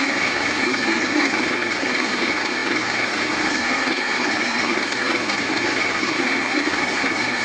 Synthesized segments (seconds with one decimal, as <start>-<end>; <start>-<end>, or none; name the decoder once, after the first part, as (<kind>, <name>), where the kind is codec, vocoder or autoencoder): 0.0-7.4 (codec, SNAC)